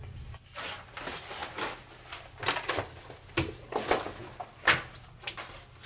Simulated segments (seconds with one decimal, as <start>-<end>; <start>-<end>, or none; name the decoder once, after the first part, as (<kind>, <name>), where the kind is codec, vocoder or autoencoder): none